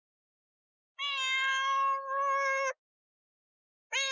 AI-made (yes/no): no